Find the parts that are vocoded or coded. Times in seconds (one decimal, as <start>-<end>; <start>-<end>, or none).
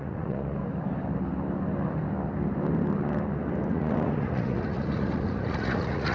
0.0-0.6; 3.7-6.1